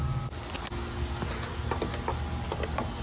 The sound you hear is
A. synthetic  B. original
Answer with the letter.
B